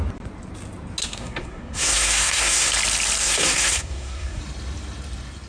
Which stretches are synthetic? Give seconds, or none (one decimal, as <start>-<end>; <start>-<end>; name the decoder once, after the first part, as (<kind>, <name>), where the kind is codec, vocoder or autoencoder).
1.0-2.7 (codec, SNAC); 3.2-4.4